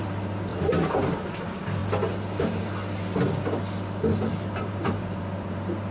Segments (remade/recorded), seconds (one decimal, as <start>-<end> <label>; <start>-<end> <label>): 0.0-1.8 remade; 1.8-4.3 recorded; 4.3-5.9 remade